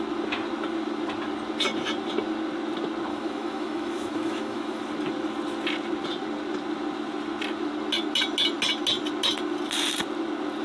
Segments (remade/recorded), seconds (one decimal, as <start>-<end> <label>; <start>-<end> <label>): 0.0-3.1 recorded; 3.1-4.8 remade; 4.8-10.6 recorded